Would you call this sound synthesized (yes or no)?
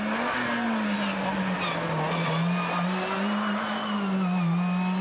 no